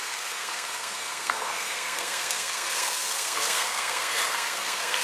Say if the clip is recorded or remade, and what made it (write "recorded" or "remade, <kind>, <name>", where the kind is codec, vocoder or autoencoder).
remade, codec, SNAC